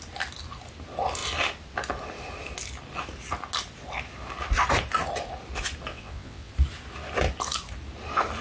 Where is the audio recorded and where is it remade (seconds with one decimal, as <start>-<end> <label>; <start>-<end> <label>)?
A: 0.0-5.9 recorded; 5.9-6.5 remade; 6.5-8.4 recorded